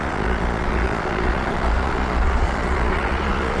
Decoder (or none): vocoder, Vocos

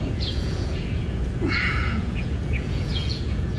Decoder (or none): vocoder, Vocos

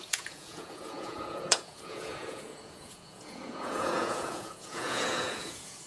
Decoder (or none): vocoder, Vocos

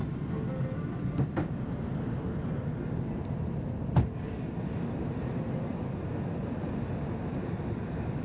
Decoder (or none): none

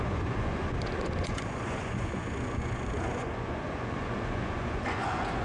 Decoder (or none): vocoder, Vocos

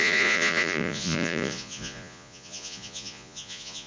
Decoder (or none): vocoder, Vocos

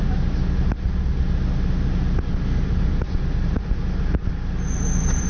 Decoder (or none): none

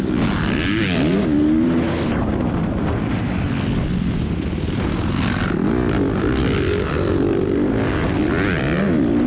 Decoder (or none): none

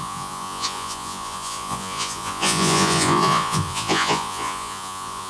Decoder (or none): vocoder, Vocos